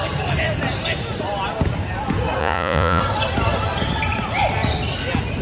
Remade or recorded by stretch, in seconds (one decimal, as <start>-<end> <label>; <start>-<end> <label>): 0.0-2.4 recorded; 2.4-3.0 remade; 3.0-5.4 recorded